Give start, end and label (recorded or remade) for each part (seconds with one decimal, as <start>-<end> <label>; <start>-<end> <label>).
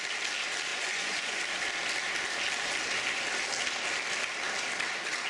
0.0-0.7 recorded; 0.7-1.4 remade; 1.4-5.3 recorded